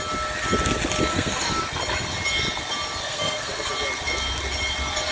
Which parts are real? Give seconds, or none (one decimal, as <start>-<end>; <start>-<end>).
0.0-1.1; 1.6-3.0; 3.7-5.1